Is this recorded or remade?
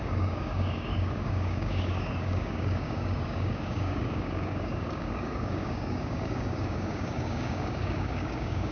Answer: remade